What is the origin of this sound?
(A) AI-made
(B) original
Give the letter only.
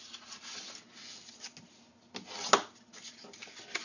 B